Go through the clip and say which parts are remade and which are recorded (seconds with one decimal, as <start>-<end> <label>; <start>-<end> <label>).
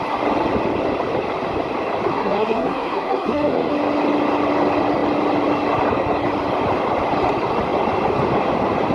0.0-2.1 recorded; 2.1-3.7 remade; 3.7-8.9 recorded